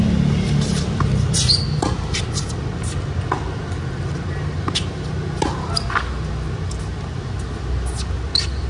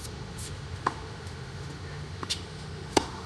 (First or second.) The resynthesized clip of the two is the second